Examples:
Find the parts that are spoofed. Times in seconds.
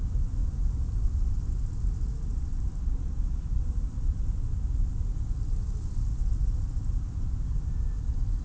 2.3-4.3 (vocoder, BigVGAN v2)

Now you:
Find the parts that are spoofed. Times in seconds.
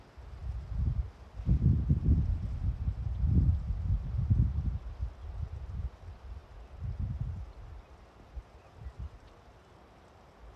none